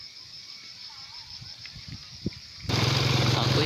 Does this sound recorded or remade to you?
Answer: remade